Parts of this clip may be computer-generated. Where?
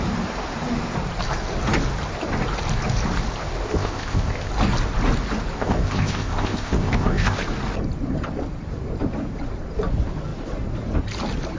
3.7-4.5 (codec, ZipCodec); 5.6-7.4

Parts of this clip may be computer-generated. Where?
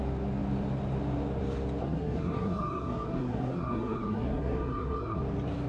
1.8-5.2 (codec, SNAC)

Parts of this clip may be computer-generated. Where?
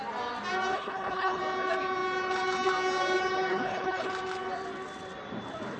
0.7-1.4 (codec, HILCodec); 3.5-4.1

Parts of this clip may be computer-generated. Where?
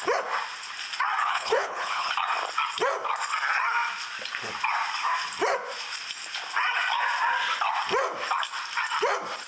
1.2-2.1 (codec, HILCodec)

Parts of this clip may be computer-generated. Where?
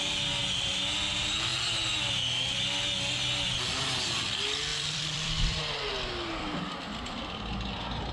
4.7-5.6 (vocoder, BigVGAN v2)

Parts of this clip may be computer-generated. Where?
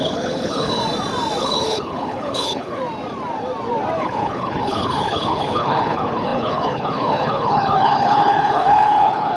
0.0-0.8 (codec, HILCodec); 1.4-2.8; 4.0-9.4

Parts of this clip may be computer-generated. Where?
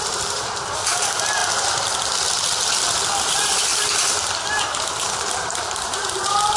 0.0-1.4 (vocoder, BigVGAN v2); 3.3-3.7; 5.1-6.6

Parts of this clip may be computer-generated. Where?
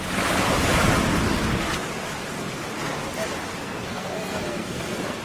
3.6-5.2 (codec, SNAC)